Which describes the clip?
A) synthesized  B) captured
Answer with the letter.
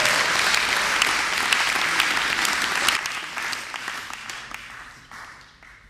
B